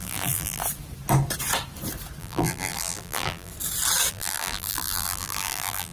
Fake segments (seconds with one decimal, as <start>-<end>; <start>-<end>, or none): 0.0-0.6; 2.2-3.5; 4.1-5.9